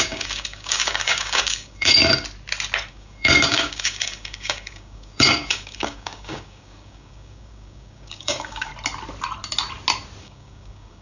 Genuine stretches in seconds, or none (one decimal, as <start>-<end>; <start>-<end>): 2.0-2.9; 8.7-10.2